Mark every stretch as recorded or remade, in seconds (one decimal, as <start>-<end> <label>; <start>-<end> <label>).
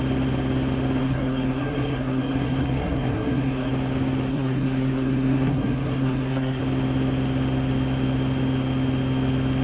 0.0-1.0 recorded; 1.0-3.7 remade; 3.7-4.3 recorded; 4.3-6.6 remade; 6.6-9.6 recorded